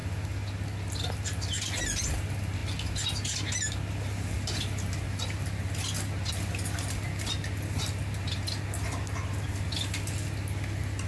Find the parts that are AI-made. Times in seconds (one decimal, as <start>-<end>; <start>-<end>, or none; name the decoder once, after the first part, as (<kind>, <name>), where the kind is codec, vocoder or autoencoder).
none